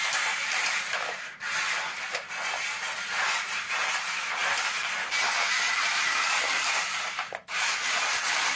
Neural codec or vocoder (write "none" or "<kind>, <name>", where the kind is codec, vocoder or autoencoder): vocoder, BigVGAN v2